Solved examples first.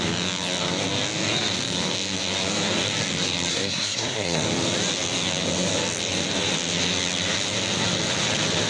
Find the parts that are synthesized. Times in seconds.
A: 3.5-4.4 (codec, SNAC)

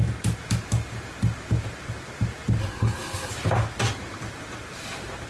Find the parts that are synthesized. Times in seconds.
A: 2.6-3.3 (codec, SNAC)

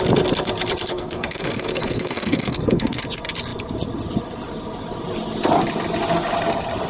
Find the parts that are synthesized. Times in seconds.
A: 0.9-3.0 (codec, SNAC)

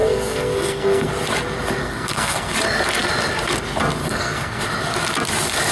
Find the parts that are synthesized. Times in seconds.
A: 0.0-1.1 (codec, SNAC); 1.8-2.5; 4.0-4.6

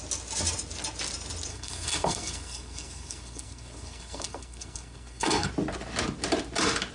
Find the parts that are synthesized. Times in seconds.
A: 1.5-5.5 (codec, SNAC)

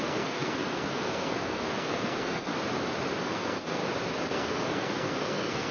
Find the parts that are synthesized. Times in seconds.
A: 0.0-2.5 (codec, SNAC); 3.2-3.8; 4.3-5.7